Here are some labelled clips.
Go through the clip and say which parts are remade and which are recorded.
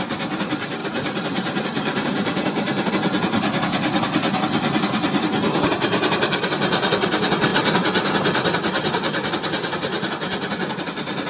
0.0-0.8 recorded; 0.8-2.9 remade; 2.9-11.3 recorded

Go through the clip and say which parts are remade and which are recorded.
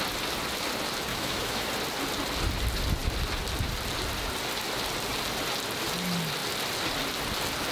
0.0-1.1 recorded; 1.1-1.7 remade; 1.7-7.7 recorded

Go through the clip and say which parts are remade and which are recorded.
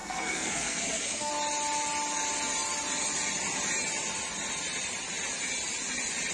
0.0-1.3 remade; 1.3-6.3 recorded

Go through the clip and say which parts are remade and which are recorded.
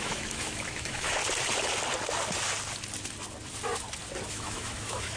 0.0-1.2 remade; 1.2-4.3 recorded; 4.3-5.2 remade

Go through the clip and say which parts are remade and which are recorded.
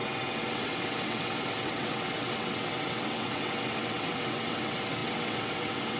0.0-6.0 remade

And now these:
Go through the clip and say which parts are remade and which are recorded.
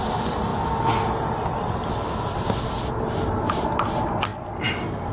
0.0-5.1 recorded